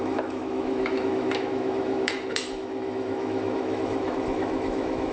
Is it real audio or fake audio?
fake